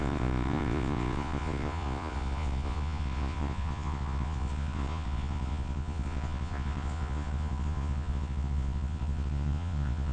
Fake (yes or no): yes